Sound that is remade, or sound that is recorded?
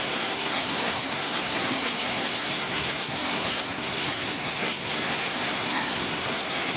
remade